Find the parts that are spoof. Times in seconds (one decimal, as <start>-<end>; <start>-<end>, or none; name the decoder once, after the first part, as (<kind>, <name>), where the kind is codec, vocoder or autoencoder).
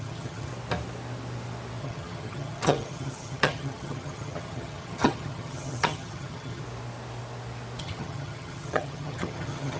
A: 0.0-0.5 (vocoder, HiFi-GAN); 1.8-6.6; 7.8-9.8